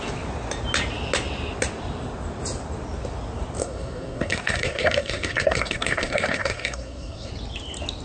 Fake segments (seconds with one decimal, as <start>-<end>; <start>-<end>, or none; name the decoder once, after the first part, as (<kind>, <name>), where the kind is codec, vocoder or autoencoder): 3.6-7.3 (codec, SNAC)